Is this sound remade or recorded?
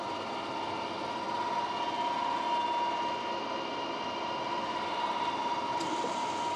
recorded